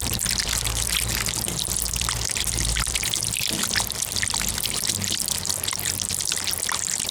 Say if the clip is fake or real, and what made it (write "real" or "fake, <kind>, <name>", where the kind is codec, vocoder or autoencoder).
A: fake, vocoder, BigVGAN v2